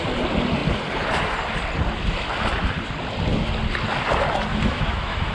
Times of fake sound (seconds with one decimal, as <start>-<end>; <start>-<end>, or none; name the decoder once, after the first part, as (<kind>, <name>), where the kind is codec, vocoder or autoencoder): 4.5-5.3 (autoencoder, DAC-VAE)